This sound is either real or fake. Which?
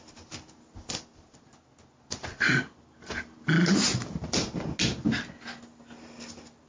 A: real